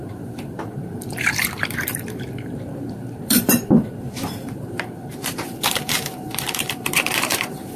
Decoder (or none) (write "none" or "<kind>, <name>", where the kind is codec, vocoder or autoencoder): vocoder, BigVGAN v2